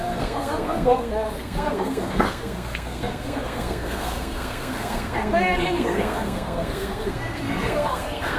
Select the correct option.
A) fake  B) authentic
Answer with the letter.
A